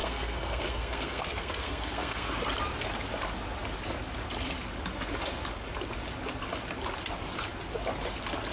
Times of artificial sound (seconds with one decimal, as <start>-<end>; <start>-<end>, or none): 0.0-2.4